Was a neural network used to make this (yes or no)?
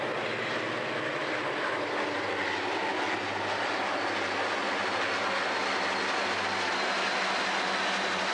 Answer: no